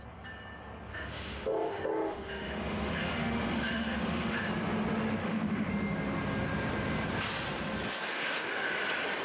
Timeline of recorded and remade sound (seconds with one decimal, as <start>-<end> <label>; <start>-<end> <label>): 0.0-0.9 recorded; 0.9-4.5 remade; 4.5-5.2 recorded; 5.2-5.7 remade; 5.7-8.1 recorded; 8.1-8.7 remade; 8.7-9.2 recorded